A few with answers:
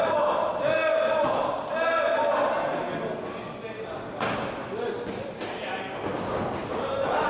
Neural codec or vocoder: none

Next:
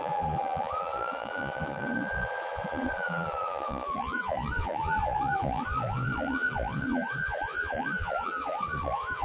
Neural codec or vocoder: vocoder, Vocos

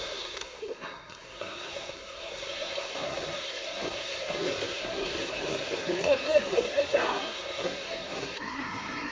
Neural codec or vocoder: codec, SNAC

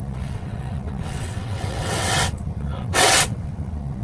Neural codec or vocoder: vocoder, WaveNeXt